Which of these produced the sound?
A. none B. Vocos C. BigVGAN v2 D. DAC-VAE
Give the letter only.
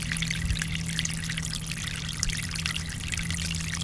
A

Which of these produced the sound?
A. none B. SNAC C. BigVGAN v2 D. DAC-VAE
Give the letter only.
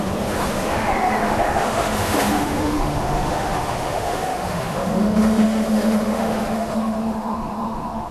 D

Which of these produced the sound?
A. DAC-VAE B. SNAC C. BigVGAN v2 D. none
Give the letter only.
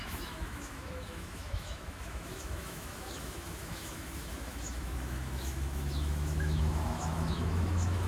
A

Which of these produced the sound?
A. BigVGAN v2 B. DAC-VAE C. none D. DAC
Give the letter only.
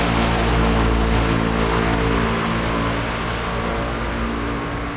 C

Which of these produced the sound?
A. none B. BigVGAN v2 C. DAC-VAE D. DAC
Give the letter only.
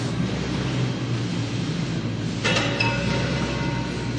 A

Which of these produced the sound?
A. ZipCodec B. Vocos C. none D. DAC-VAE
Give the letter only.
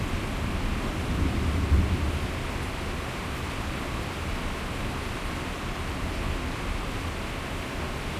C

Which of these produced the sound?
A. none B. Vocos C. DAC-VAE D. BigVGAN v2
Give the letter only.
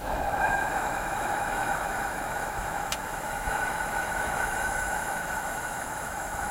C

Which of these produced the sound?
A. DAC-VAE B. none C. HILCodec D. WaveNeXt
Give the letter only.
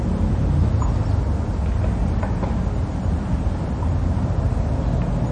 B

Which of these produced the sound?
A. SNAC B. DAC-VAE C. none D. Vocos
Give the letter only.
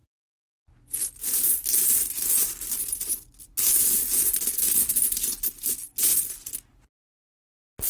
C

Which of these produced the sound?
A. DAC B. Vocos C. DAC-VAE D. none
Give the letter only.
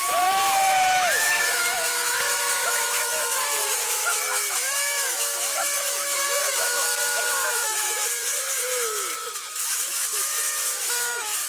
C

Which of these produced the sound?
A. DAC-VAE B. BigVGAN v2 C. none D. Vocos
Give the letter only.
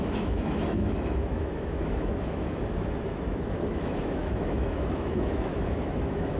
A